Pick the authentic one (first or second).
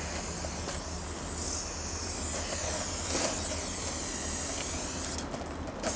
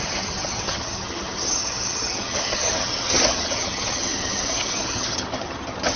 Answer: first